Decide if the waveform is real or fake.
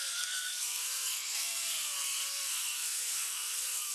fake